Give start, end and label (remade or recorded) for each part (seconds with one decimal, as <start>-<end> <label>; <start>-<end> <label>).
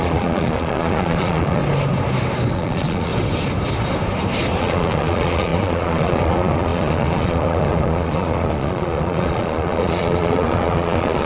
0.0-1.6 remade; 1.6-2.5 recorded; 2.5-3.1 remade; 3.1-4.6 recorded; 4.6-11.3 remade